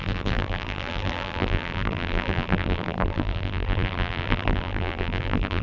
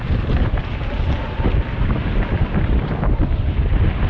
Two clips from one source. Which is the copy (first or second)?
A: first